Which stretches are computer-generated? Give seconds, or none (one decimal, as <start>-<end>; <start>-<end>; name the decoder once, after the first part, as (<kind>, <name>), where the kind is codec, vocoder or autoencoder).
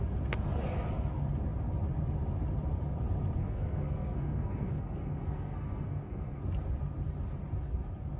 3.4-6.4 (codec, SNAC)